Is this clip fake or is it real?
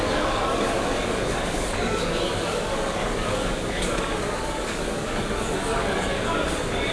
fake